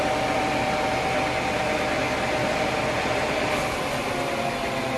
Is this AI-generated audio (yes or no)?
no